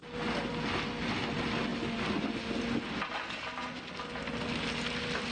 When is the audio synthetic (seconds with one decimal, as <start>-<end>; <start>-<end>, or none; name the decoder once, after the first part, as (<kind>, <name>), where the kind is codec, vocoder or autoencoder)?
none